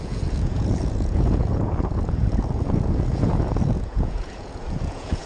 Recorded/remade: remade